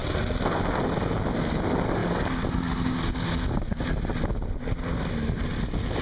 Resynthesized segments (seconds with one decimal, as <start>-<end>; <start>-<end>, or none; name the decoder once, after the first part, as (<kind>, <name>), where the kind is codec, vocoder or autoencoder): none